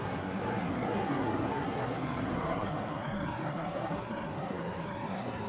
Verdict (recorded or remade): remade